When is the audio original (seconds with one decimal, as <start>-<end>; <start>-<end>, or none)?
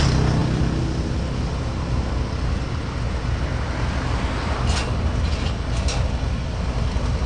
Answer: 0.0-7.3